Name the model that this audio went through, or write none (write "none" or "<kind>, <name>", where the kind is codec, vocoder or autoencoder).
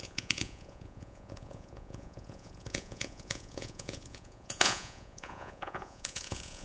vocoder, Vocos